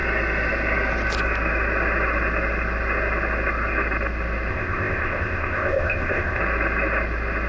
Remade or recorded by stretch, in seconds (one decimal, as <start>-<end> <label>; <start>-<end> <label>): 0.0-4.5 recorded; 4.5-6.4 remade; 6.4-7.5 recorded